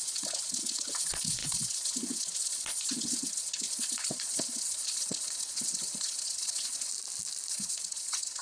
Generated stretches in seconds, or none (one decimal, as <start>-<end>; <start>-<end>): 0.0-6.9; 7.5-8.4

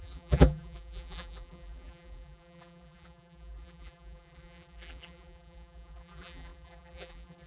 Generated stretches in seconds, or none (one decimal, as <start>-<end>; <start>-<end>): 0.0-7.5

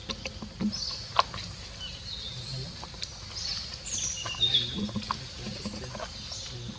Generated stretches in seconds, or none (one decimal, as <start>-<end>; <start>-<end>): none

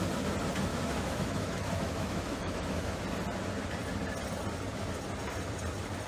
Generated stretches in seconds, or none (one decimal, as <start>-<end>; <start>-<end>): 0.7-3.0

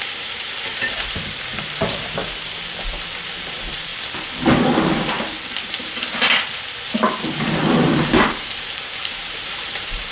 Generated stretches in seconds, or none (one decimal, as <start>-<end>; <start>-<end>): 0.0-2.2; 3.3-3.9; 7.3-10.1

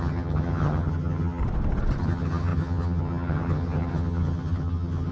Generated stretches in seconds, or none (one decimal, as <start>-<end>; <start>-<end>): 0.0-1.4; 2.0-5.1

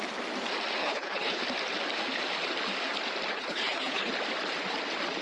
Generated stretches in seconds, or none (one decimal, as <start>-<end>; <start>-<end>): 0.8-1.4; 3.3-4.1

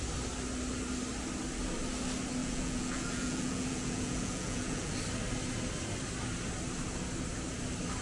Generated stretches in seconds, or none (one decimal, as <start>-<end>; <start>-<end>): 2.4-4.9